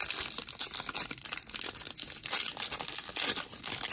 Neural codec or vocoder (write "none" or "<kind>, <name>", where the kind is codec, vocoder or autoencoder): none